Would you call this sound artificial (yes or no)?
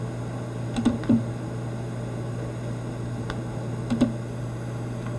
no